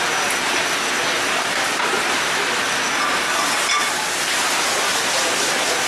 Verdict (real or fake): real